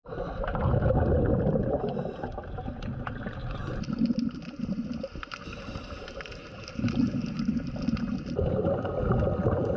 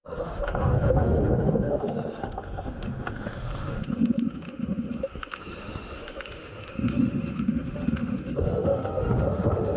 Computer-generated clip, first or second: second